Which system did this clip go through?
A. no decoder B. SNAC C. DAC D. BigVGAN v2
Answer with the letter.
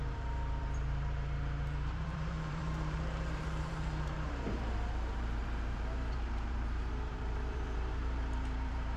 D